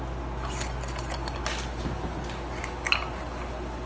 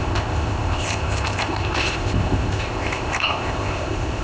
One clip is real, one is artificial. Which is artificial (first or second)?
second